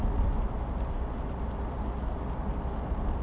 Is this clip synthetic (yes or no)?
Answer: no